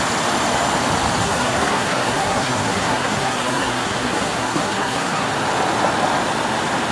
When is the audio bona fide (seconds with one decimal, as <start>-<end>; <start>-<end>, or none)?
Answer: 0.0-1.2; 5.3-6.9

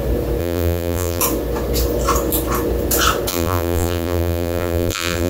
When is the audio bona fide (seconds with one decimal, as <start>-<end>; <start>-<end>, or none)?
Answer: 0.0-0.4; 1.2-3.3

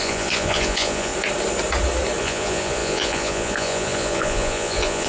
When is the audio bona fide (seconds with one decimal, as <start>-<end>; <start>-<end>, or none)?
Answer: 1.1-2.2

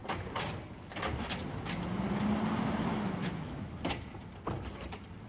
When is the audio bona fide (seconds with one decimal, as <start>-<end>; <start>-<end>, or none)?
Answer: 0.0-2.9; 3.7-5.3